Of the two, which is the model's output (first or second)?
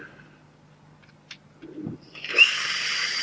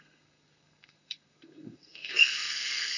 second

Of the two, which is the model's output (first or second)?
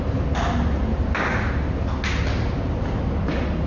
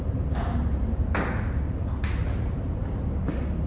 second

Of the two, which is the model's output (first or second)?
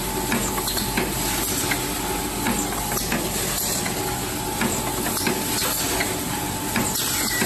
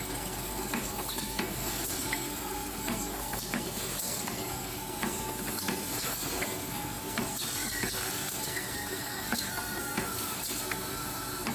second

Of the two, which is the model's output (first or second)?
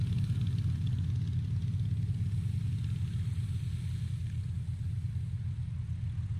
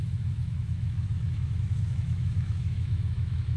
second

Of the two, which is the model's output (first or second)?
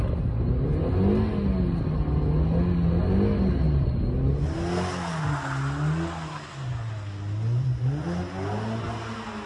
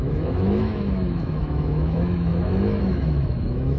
second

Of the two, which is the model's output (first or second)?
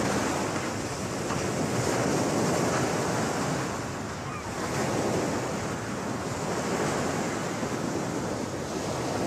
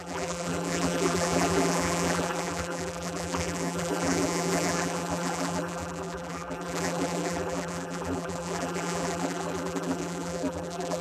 second